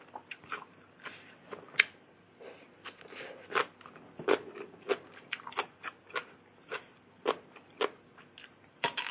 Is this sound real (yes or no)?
yes